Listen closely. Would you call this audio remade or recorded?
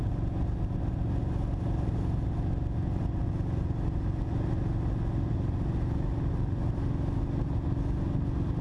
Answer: recorded